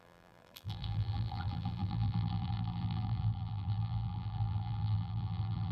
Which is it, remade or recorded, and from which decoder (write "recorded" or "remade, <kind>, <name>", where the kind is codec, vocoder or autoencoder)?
remade, vocoder, BigVGAN v2